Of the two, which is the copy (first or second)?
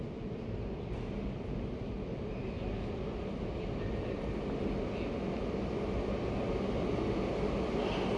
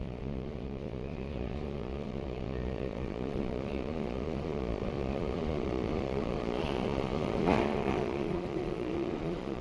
second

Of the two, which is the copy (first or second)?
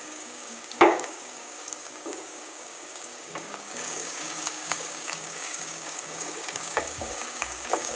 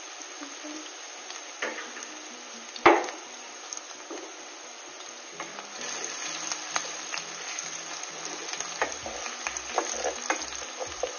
first